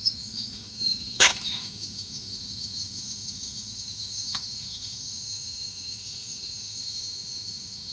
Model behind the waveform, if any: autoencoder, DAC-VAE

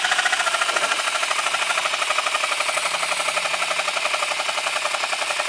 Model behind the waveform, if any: vocoder, Vocos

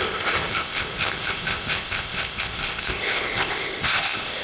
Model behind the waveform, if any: codec, ZipCodec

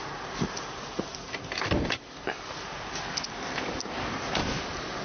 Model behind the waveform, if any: none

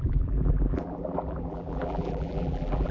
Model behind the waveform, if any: vocoder, BigVGAN v2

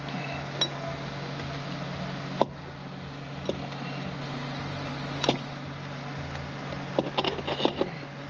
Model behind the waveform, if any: none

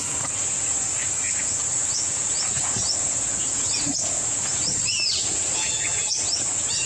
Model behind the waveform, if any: vocoder, Vocos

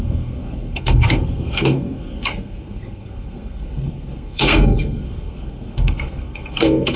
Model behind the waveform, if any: codec, SNAC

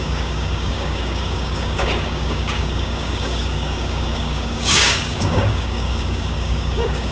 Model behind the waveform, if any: codec, DAC